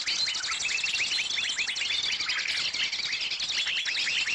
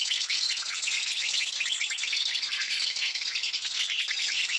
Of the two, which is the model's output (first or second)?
second